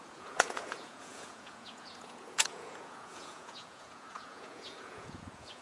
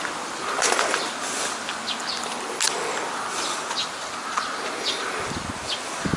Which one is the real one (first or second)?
second